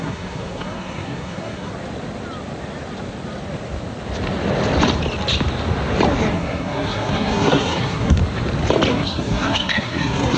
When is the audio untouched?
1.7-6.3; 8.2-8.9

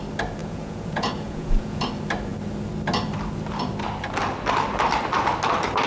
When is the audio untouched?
0.0-0.4; 1.8-5.9